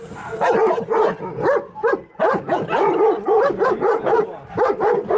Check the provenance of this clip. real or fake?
real